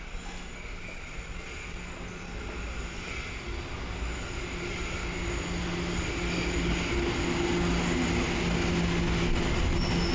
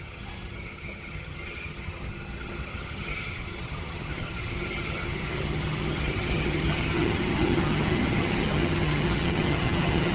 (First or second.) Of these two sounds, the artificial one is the second